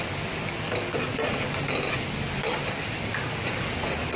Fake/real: real